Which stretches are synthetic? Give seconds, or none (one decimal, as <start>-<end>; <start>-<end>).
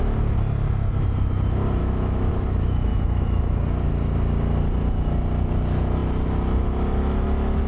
1.8-2.3; 2.9-3.5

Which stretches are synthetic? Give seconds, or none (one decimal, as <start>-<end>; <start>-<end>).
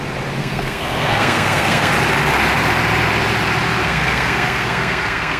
0.4-1.9; 3.8-5.4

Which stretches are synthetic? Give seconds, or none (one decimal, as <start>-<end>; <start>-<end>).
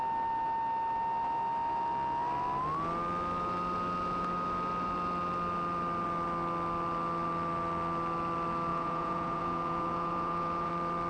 8.7-10.7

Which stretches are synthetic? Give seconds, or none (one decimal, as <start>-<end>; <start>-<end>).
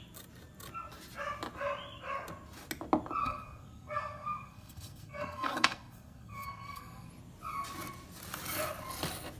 3.2-7.1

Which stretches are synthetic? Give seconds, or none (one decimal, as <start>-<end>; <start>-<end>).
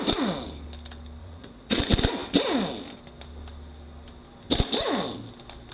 1.2-1.8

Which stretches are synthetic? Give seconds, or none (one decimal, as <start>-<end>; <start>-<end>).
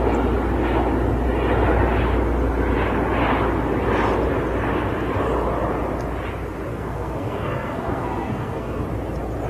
6.7-8.8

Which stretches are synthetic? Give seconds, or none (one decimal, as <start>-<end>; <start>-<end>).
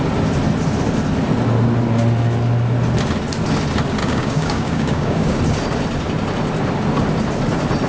4.0-5.4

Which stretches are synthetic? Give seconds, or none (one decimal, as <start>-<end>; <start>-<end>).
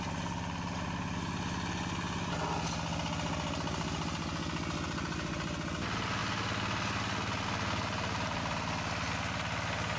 none